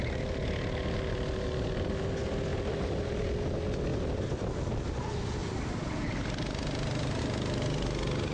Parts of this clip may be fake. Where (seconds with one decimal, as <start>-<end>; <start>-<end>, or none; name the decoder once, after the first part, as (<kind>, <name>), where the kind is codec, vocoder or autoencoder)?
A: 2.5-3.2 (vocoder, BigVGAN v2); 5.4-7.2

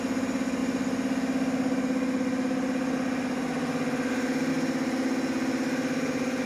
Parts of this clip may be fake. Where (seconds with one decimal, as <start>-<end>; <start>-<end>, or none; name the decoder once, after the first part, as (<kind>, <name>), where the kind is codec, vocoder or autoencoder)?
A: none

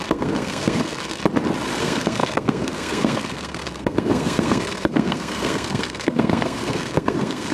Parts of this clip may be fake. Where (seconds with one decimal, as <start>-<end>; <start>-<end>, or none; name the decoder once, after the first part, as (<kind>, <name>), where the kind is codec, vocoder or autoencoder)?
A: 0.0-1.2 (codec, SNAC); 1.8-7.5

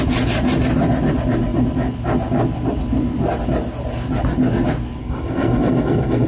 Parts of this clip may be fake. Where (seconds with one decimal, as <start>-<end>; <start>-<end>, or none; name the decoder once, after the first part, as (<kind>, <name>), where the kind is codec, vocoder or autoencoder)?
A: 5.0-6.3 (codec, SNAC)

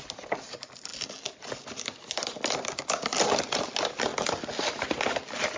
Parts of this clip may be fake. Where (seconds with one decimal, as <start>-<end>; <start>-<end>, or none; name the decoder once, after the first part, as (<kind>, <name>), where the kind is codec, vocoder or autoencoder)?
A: none

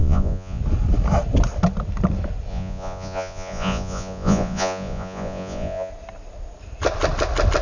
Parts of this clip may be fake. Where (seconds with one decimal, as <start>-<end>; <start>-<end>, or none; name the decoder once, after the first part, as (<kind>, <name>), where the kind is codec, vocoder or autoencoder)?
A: 0.0-0.6 (vocoder, Vocos); 2.5-5.9